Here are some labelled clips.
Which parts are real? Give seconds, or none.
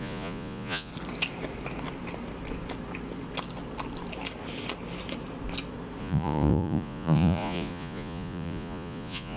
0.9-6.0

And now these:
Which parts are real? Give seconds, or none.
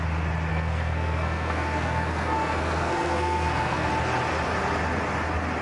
0.0-0.5; 3.9-5.6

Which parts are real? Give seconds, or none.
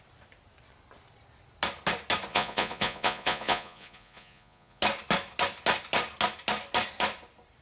0.0-2.3; 4.8-7.6